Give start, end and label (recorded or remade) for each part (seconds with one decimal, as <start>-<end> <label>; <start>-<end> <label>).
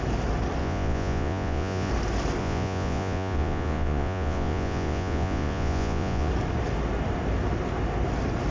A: 0.0-0.6 recorded; 0.6-1.9 remade; 1.9-2.4 recorded; 2.4-6.3 remade; 6.3-8.5 recorded